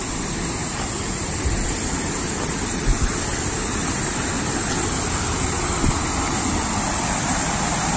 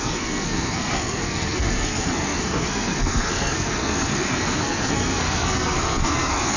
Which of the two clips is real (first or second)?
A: first